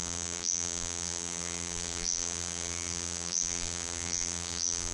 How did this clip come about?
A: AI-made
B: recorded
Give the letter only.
A